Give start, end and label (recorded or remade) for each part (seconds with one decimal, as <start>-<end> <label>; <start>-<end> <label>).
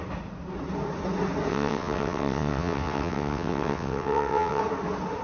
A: 0.0-1.5 recorded; 1.5-4.6 remade; 4.6-5.2 recorded